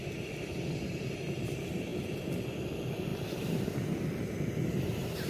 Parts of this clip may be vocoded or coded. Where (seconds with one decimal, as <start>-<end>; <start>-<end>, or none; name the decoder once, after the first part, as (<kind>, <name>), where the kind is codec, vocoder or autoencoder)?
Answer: none